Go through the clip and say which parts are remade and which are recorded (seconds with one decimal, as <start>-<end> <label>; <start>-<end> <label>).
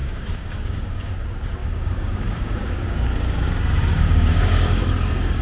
0.0-1.1 remade; 1.1-1.6 recorded; 1.6-4.8 remade; 4.8-5.4 recorded